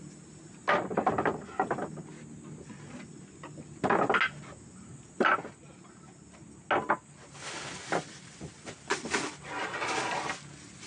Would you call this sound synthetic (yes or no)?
no